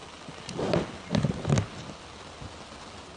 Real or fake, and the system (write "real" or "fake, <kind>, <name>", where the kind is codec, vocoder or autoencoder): real